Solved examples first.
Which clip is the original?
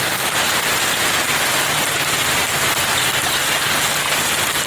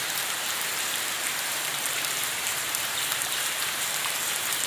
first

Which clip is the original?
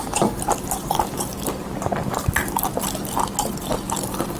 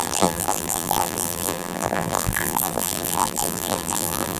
first